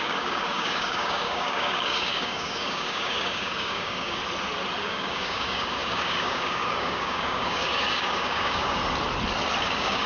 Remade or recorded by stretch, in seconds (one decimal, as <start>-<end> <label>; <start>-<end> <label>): 0.0-4.2 remade; 4.2-4.8 recorded; 4.8-8.8 remade; 8.8-9.6 recorded; 9.6-10.1 remade